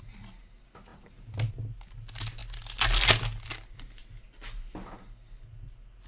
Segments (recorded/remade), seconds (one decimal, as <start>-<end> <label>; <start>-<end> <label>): 0.0-6.1 recorded